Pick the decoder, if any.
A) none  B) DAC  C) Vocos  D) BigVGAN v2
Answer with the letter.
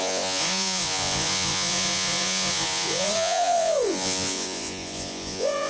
C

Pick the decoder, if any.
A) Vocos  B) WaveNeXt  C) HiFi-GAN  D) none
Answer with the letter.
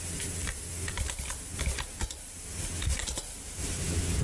D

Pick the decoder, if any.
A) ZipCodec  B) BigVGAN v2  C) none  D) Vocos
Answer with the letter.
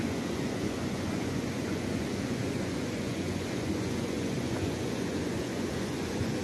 D